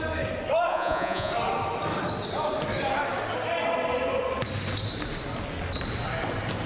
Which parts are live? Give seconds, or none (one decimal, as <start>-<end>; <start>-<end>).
0.0-0.7; 1.3-6.7